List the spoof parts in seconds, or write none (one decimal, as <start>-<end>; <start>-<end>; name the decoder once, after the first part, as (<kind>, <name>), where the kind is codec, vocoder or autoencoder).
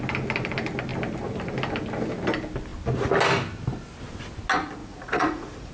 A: 4.8-5.7 (vocoder, Vocos)